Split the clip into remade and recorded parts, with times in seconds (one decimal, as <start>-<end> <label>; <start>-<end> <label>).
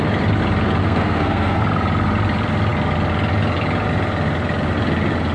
0.0-0.8 recorded; 0.8-1.6 remade; 1.6-5.3 recorded